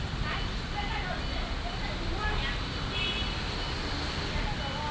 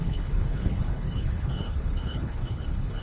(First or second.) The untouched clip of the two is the first